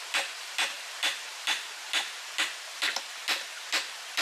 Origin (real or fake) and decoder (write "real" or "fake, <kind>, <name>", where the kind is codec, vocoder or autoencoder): real